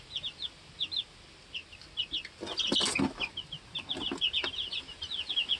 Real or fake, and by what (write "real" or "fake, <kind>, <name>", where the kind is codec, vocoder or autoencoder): real